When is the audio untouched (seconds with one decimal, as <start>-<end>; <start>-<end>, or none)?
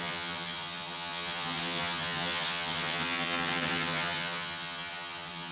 none